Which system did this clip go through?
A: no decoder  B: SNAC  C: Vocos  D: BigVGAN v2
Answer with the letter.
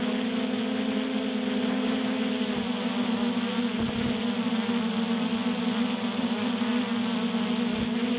A